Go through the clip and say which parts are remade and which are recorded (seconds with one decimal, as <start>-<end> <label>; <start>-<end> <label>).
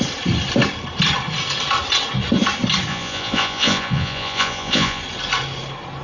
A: 0.0-2.9 recorded; 2.9-5.0 remade; 5.0-6.0 recorded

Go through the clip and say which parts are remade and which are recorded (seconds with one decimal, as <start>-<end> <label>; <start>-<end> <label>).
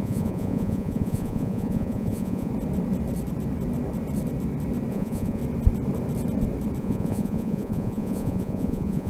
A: 0.0-2.5 remade; 2.5-4.9 recorded; 4.9-5.4 remade; 5.4-6.8 recorded; 6.8-9.1 remade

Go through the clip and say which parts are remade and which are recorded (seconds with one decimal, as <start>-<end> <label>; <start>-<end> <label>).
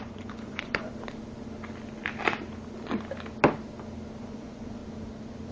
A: 0.0-0.9 remade; 0.9-4.2 recorded; 4.2-4.8 remade; 4.8-5.5 recorded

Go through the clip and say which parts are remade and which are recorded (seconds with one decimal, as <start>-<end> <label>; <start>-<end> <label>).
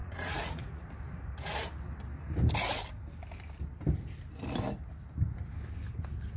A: 0.0-0.8 remade; 0.8-6.4 recorded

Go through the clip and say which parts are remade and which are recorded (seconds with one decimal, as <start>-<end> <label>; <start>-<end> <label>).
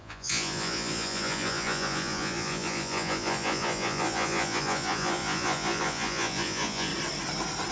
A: 0.0-6.9 remade; 6.9-7.7 recorded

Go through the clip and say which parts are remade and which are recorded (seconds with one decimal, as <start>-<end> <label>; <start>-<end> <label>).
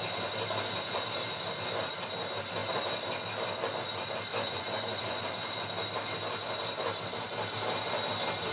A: 0.0-4.3 recorded; 4.3-5.2 remade; 5.2-8.5 recorded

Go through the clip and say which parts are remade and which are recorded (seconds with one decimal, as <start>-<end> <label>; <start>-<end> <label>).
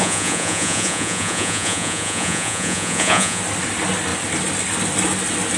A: 0.0-3.4 remade; 3.4-5.6 recorded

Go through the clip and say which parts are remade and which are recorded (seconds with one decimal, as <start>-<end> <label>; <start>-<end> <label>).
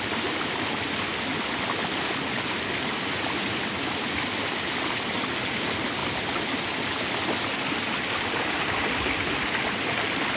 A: 0.0-10.4 recorded